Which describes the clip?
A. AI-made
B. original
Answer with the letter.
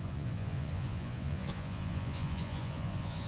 A